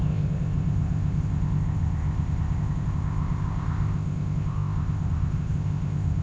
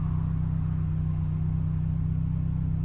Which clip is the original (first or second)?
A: second